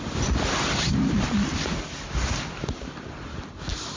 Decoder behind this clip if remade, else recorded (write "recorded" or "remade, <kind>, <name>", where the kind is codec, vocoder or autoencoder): recorded